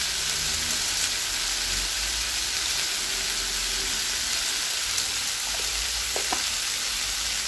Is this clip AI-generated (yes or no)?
no